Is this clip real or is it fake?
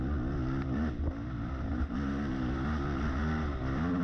real